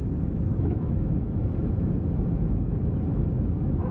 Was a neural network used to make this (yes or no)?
yes